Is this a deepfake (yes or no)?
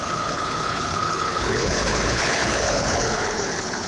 yes